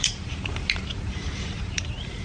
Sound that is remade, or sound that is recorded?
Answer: remade